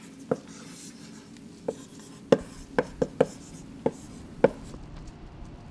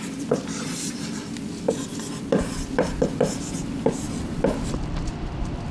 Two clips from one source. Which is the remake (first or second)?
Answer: second